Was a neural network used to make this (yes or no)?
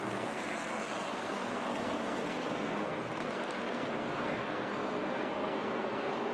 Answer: yes